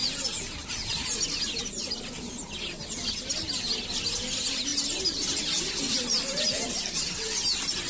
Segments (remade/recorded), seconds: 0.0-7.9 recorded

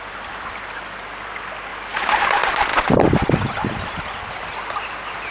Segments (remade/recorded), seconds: 0.0-5.3 recorded